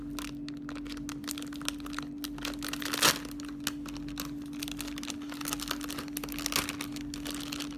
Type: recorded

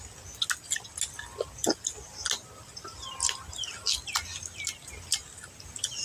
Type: recorded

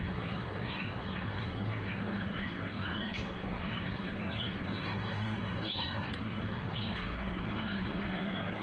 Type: remade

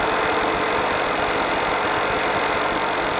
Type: recorded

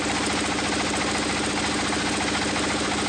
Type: recorded